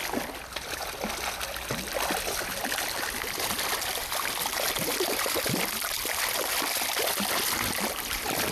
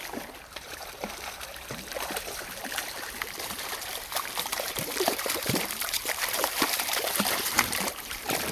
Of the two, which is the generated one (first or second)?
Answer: second